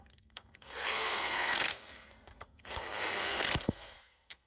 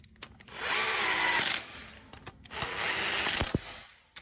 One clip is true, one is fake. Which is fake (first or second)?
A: first